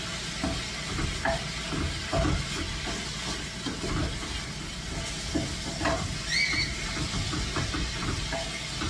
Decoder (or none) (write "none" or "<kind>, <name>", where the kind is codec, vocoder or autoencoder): none